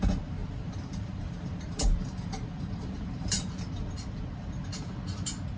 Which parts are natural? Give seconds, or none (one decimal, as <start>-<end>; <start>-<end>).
0.0-0.4; 3.7-5.6